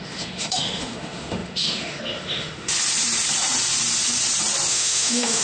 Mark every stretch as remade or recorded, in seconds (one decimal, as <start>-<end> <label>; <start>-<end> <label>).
0.0-2.7 remade; 2.7-4.7 recorded; 4.7-5.4 remade